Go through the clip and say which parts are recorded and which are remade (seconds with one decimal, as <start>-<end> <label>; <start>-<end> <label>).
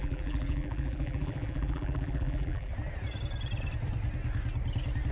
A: 0.0-2.7 remade; 2.7-5.1 recorded